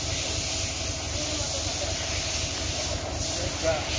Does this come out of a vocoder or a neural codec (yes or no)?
no